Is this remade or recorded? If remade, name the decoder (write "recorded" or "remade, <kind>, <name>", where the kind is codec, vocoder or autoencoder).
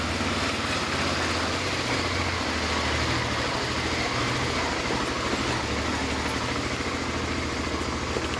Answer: recorded